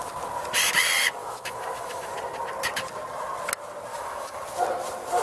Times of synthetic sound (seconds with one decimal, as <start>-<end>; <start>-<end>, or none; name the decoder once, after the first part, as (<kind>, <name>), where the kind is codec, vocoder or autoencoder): 1.2-2.1 (autoencoder, DAC-VAE); 3.9-4.4